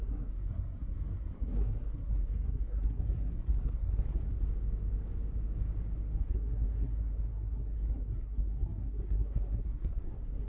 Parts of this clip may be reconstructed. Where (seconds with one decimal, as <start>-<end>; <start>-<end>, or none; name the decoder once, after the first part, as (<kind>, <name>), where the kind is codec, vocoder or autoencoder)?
0.0-4.2 (codec, SNAC); 6.2-10.5

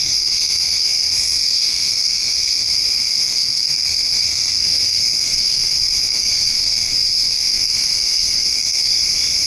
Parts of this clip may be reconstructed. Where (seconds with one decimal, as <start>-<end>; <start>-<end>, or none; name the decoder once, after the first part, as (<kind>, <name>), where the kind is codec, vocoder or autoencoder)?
0.0-8.9 (codec, SNAC)

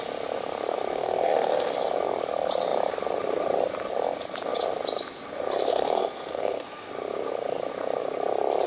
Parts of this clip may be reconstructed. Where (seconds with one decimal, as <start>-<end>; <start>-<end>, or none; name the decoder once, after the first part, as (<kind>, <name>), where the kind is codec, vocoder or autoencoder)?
0.9-1.7 (codec, SNAC); 5.7-6.9